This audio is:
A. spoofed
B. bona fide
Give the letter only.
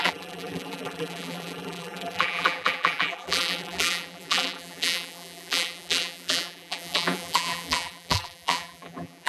A